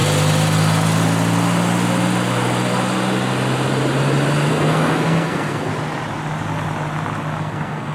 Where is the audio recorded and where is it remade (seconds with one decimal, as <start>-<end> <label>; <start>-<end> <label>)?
0.0-4.5 recorded; 4.5-5.7 remade; 5.7-7.4 recorded; 7.4-7.9 remade